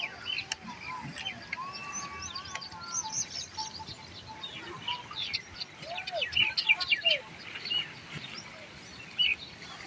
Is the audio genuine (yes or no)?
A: yes